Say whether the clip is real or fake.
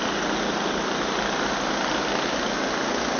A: real